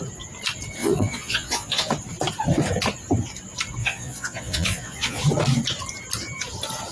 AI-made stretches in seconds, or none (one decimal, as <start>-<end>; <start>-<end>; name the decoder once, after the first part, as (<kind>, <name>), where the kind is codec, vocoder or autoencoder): 0.8-1.9 (vocoder, Vocos); 3.8-5.2